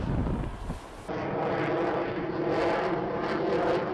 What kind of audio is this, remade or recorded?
recorded